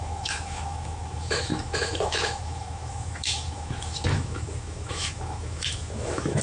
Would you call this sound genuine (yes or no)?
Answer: no